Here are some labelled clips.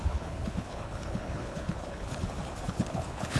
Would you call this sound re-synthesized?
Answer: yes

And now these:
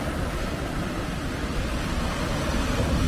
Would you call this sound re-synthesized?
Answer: no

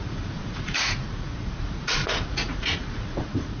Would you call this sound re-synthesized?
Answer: yes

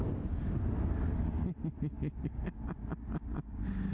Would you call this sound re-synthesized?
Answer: no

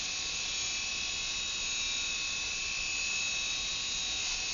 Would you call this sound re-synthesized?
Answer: no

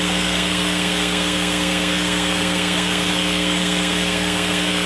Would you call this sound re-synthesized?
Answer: yes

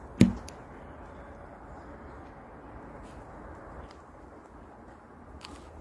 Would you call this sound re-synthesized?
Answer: no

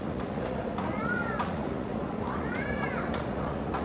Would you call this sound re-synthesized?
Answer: yes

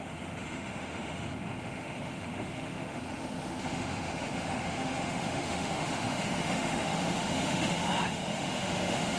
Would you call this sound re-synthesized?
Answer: yes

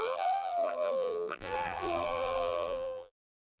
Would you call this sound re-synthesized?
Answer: yes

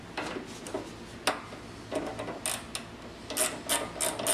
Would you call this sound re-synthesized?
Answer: no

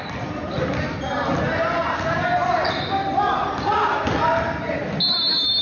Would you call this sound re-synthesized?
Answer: no